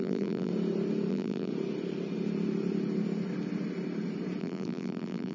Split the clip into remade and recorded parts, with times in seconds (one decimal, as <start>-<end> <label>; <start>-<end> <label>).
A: 0.0-0.5 remade; 0.5-1.1 recorded; 1.1-1.5 remade; 1.5-4.4 recorded; 4.4-5.3 remade